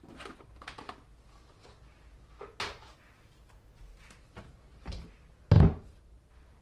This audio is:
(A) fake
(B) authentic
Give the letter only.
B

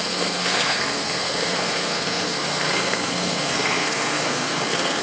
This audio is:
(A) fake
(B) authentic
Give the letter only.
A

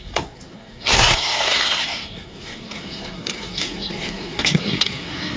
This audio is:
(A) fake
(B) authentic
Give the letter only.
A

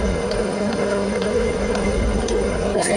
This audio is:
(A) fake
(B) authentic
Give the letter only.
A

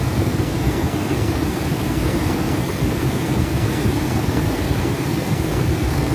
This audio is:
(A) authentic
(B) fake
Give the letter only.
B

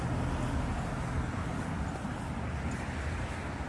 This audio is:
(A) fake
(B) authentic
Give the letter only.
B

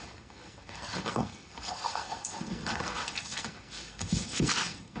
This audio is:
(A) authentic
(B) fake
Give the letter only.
B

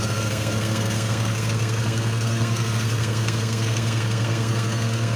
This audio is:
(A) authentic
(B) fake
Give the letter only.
B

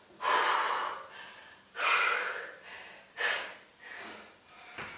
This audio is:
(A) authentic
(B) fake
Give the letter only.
A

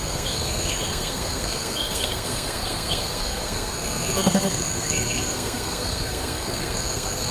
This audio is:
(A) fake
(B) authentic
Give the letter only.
A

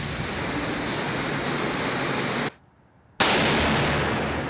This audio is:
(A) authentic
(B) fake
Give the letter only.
A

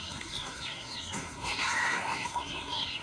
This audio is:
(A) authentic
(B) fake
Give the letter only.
B